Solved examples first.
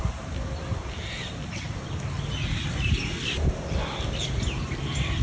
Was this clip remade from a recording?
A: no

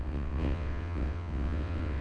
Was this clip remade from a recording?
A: yes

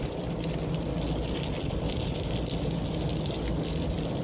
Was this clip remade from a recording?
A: no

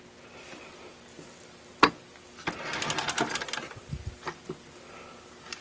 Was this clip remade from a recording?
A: no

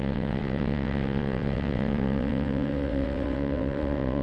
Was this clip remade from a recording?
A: yes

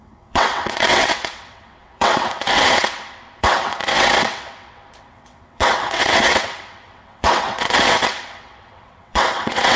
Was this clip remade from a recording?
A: yes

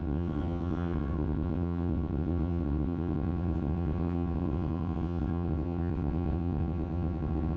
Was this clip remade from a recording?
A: yes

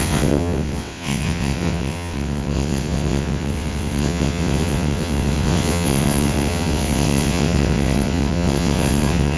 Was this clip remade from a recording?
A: yes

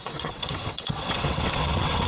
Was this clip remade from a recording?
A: yes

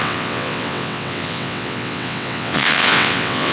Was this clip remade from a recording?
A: yes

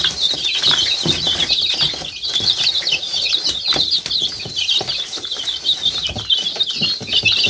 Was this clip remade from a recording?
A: no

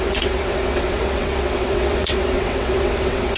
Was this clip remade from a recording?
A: yes